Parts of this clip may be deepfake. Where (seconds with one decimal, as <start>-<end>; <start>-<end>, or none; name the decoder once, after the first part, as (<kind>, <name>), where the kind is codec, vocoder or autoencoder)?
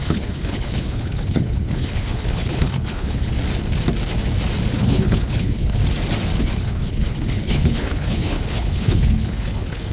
0.0-3.3 (codec, HILCodec); 4.7-5.8; 6.4-9.9